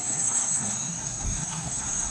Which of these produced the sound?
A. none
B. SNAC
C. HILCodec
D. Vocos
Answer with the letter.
B